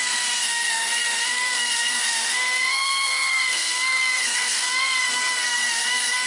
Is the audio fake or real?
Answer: fake